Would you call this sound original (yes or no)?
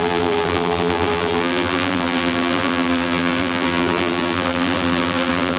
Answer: no